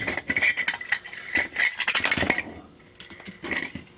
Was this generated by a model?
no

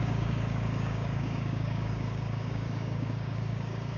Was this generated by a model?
yes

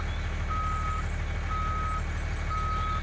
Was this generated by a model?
no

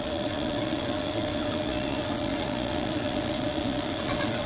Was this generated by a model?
yes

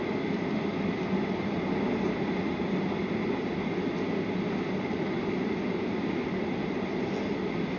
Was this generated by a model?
no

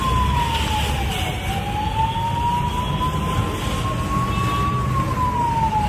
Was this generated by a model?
no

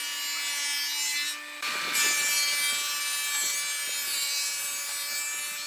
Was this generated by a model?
no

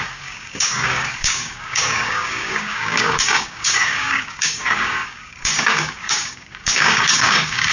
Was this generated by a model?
yes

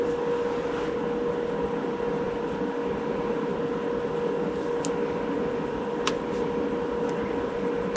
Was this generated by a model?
no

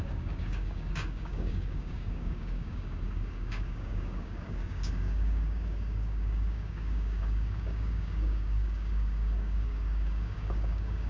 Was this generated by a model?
yes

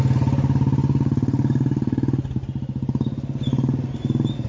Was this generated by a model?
no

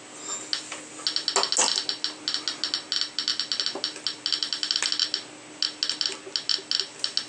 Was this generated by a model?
no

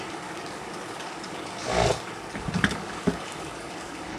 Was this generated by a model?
yes